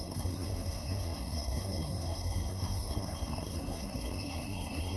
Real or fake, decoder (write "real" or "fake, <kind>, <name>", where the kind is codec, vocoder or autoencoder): fake, codec, SNAC